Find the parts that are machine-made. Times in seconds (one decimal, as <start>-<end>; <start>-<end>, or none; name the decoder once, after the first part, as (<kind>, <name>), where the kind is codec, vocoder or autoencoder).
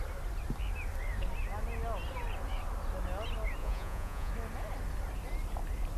3.6-4.3 (vocoder, Vocos)